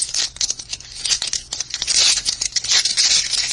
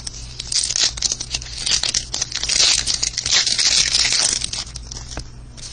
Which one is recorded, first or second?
second